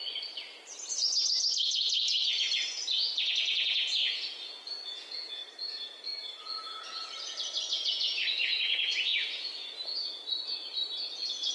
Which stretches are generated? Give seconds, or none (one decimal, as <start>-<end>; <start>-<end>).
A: 0.9-5.4; 6.4-11.5